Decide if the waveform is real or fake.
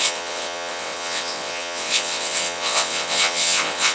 fake